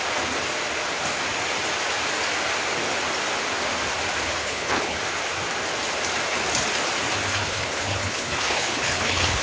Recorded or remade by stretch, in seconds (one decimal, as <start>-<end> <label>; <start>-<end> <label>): 0.0-4.4 recorded; 4.4-5.0 remade; 5.0-7.3 recorded; 7.3-9.4 remade